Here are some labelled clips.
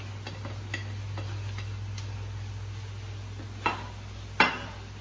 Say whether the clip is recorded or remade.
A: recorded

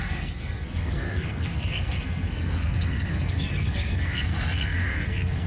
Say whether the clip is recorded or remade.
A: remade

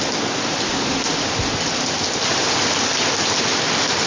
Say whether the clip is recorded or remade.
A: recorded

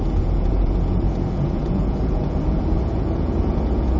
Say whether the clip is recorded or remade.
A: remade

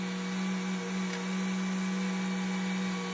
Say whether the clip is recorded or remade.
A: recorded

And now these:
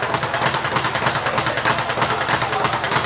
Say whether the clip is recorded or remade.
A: recorded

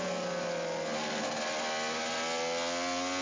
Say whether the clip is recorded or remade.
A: recorded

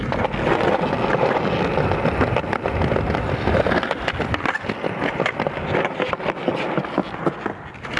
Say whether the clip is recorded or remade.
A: recorded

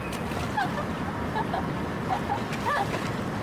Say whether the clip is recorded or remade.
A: recorded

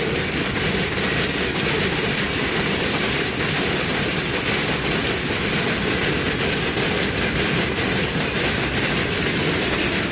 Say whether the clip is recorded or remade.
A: recorded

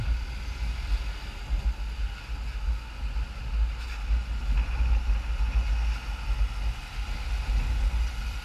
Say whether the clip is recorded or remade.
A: recorded